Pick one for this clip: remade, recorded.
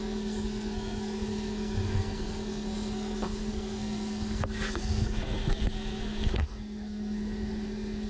remade